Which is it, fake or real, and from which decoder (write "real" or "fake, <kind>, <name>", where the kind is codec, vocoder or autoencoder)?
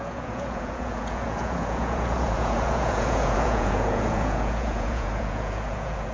fake, vocoder, Vocos